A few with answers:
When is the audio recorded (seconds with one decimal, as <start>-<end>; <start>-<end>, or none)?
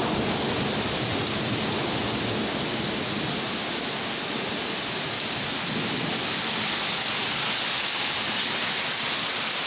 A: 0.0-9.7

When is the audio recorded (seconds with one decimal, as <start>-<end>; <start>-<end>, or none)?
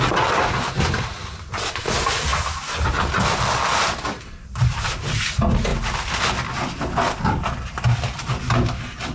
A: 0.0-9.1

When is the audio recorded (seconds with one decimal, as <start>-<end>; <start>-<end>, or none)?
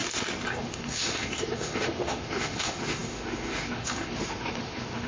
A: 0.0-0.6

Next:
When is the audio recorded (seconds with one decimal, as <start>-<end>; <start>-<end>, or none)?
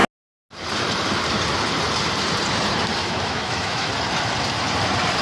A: 0.0-3.0; 3.9-5.2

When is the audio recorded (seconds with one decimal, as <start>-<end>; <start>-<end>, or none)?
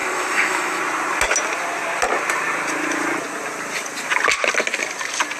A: 0.8-5.4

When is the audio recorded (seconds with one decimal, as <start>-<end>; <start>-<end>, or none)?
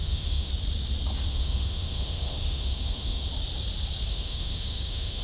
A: 0.5-1.3; 3.3-4.1